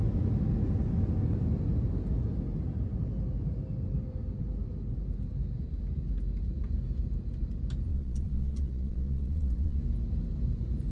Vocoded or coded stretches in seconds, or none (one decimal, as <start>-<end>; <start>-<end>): 7.9-9.8